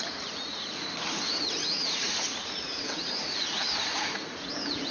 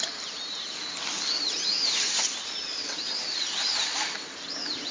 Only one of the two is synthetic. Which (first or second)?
first